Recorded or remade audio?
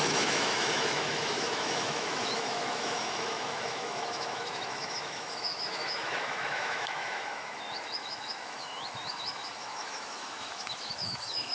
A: remade